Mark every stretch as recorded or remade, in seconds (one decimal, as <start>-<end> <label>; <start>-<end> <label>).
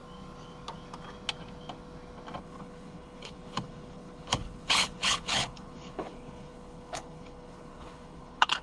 0.0-2.4 recorded; 2.4-8.6 remade